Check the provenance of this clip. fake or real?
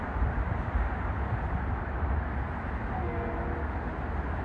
real